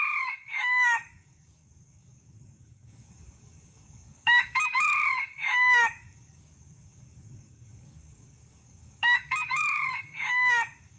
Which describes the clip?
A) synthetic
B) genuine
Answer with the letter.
A